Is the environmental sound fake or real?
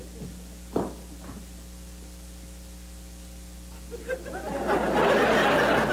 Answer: real